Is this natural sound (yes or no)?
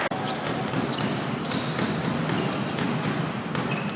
yes